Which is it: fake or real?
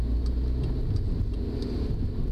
real